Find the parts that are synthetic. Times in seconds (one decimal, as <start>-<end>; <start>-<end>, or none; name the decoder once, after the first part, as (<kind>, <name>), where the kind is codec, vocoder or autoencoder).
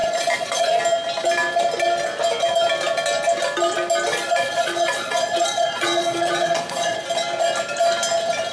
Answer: 0.0-0.8 (vocoder, Vocos); 4.1-7.0